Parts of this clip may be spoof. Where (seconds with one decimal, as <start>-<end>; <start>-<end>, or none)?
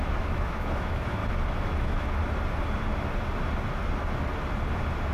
0.0-1.2; 1.8-2.2